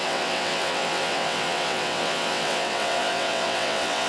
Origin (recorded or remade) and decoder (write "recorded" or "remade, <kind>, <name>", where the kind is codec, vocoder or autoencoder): remade, vocoder, WaveNeXt